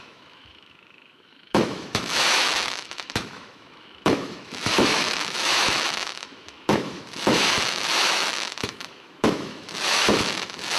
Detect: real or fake fake